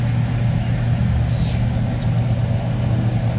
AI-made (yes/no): no